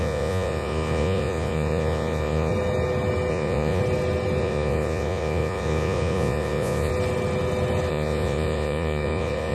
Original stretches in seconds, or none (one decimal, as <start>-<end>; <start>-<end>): 2.5-3.3; 3.8-4.4; 6.9-7.9